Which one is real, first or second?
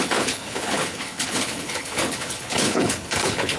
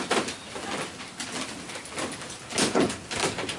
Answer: second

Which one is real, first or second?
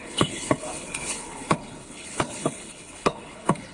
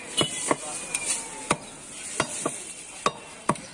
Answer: second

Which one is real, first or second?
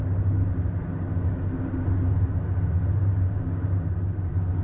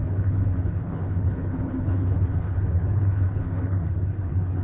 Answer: first